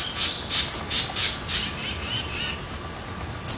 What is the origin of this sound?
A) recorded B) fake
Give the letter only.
A